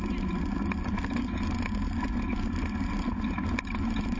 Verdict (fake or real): real